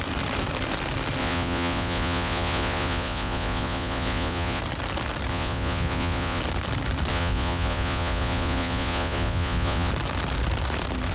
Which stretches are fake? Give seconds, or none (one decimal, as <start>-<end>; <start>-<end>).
1.2-4.6; 5.3-6.4; 7.1-9.9